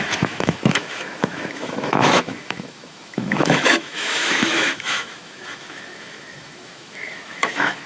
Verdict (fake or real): fake